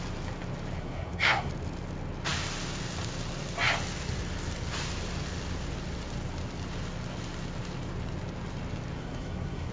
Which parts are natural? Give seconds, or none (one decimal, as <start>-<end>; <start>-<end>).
0.0-0.8; 1.5-9.0